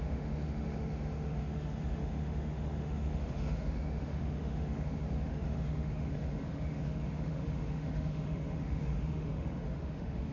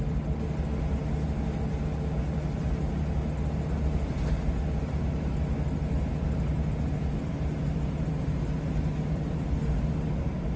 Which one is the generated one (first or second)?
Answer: first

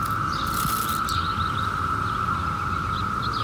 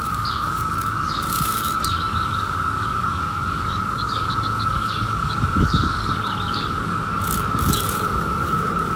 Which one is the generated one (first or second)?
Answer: second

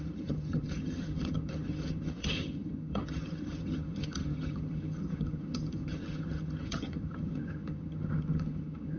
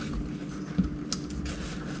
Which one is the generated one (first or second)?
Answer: first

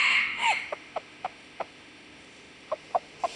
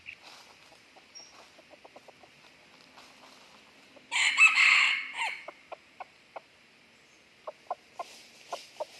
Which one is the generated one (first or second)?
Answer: first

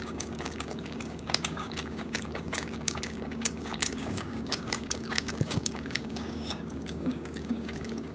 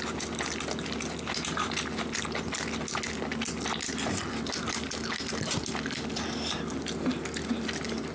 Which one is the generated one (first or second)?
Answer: first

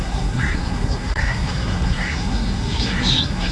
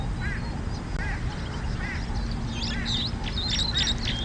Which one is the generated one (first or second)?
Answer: first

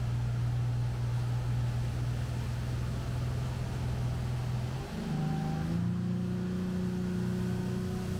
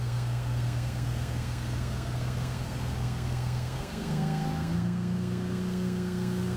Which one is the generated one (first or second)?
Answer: second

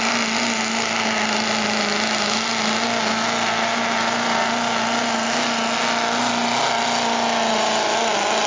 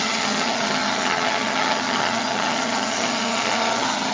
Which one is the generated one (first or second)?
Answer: second